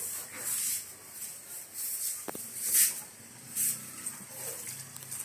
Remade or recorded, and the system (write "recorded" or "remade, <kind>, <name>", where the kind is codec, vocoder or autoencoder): recorded